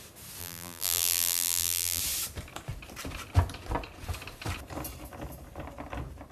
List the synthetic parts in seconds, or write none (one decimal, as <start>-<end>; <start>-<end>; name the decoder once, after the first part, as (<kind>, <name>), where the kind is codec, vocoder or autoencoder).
0.4-2.0 (vocoder, BigVGAN v2)